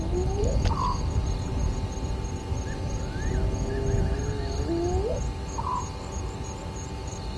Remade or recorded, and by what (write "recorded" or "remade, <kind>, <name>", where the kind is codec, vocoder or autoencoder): recorded